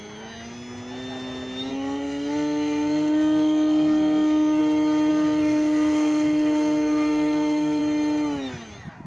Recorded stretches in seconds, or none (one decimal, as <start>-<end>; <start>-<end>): 0.0-1.7; 4.6-5.1; 7.8-9.1